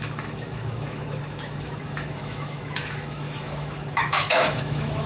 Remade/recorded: remade